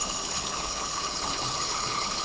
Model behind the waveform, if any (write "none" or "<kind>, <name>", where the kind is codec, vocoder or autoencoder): codec, HILCodec